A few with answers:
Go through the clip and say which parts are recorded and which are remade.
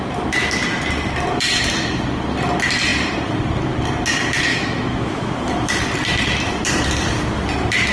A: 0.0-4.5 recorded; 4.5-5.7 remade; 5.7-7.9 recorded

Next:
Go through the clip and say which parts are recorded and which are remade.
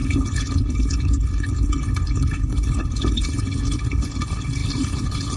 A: 0.0-5.4 remade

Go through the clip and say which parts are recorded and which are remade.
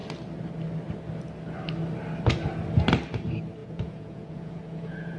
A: 0.0-3.6 recorded; 3.6-5.2 remade